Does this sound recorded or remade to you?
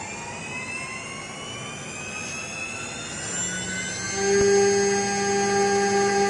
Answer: recorded